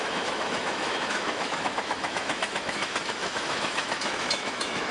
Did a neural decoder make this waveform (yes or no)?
yes